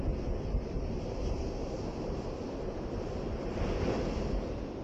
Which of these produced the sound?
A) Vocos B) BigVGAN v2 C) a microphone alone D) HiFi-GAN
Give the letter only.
C